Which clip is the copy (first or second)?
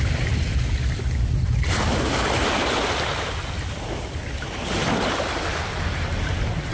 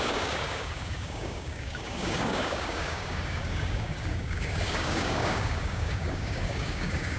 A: second